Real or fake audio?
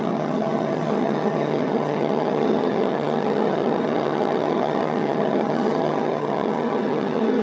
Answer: fake